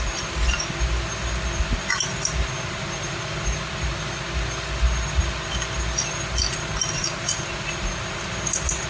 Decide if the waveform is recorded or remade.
recorded